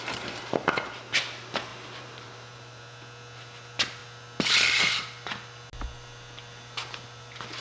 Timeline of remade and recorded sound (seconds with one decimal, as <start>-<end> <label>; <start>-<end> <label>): 0.0-1.7 recorded; 1.7-2.8 remade; 2.8-7.6 recorded